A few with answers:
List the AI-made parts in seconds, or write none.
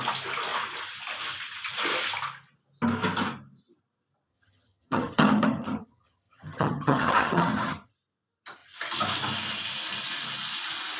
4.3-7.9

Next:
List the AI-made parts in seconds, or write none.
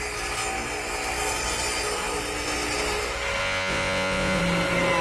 3.4-4.4